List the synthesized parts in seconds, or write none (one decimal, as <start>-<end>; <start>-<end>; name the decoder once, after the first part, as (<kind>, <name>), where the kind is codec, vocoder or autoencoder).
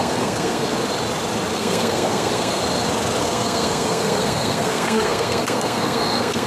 0.0-0.8 (codec, SNAC); 1.5-2.6; 3.2-6.5